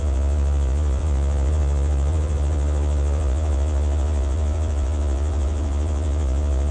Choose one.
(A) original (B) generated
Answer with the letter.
B